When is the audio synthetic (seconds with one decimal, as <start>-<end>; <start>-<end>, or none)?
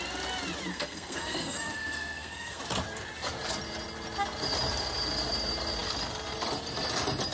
0.7-2.6